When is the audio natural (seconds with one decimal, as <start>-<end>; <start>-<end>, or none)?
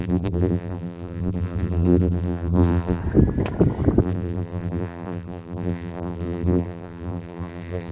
3.0-4.0